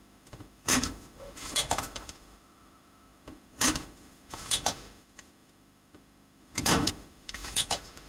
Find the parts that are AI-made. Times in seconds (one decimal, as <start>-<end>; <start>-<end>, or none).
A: 0.0-8.1